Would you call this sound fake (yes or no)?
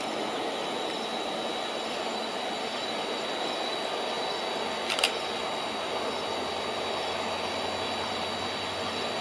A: no